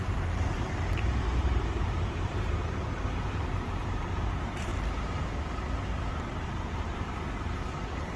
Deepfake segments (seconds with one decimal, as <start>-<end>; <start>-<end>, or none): 0.0-4.7; 6.1-8.2